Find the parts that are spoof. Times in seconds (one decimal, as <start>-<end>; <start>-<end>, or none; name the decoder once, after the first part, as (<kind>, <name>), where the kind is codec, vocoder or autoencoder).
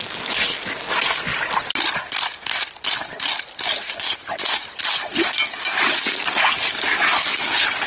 0.0-1.3 (codec, DAC); 6.0-7.9